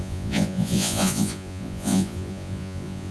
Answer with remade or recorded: remade